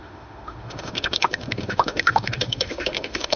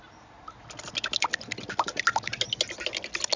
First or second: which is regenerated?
first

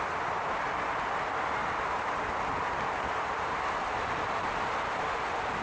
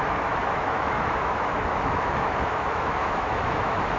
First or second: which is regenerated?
second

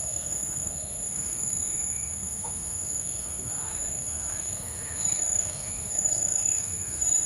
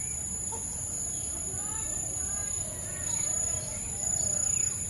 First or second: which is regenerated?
first